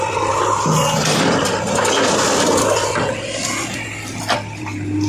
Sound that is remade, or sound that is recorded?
recorded